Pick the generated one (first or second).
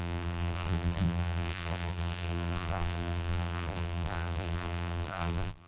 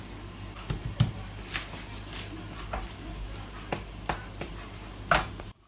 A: first